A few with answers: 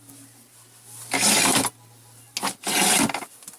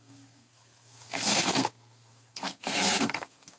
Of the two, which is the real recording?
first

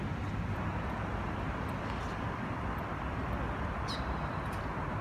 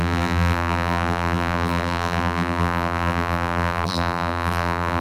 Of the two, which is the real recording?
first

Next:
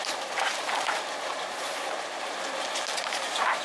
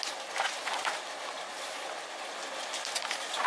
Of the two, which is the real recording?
second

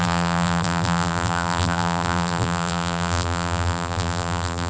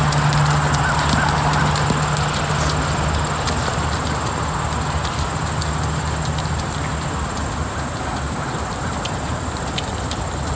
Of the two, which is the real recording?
second